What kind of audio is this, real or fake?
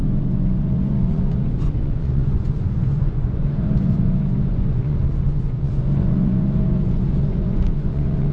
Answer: fake